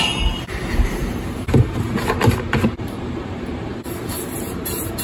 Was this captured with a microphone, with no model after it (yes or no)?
no